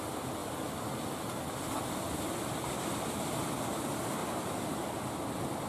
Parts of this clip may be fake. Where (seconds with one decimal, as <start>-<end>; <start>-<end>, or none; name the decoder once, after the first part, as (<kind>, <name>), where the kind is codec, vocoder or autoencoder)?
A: none